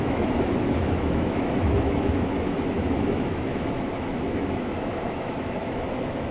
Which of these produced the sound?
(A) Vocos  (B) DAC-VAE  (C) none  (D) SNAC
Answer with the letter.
B